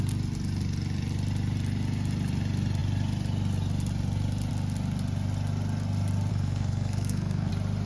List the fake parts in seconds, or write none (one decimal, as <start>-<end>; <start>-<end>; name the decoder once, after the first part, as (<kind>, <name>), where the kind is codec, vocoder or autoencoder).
6.3-7.5 (codec, SNAC)